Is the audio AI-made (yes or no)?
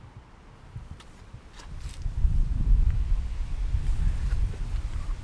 no